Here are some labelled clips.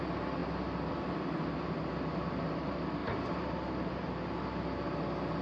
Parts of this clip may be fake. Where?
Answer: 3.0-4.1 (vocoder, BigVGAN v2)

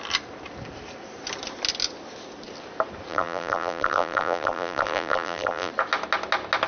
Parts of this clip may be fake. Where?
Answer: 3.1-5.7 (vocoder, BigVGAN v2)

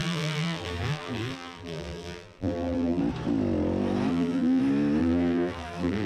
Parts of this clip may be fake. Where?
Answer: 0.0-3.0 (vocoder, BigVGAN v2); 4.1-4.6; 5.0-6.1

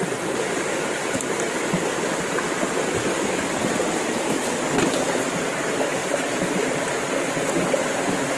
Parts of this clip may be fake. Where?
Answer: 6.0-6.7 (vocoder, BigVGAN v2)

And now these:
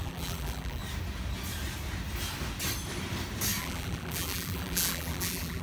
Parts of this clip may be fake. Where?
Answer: 0.0-0.8 (vocoder, BigVGAN v2); 3.6-5.6

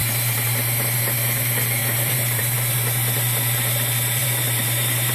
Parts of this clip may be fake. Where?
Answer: 0.0-1.0 (vocoder, BigVGAN v2); 1.8-2.4; 4.2-5.1